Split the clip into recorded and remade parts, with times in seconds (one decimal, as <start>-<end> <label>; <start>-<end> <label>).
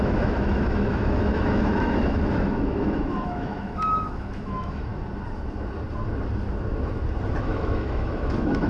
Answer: 0.0-4.9 remade; 4.9-7.4 recorded; 7.4-8.7 remade